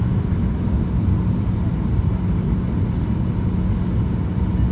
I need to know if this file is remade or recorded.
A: recorded